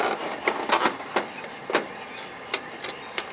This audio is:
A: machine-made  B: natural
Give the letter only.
A